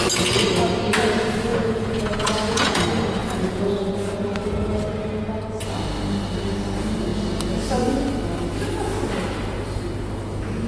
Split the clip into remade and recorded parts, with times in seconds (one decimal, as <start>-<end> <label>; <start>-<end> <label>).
0.0-1.5 recorded; 1.5-2.8 remade; 2.8-3.2 recorded; 3.2-3.8 remade; 3.8-10.7 recorded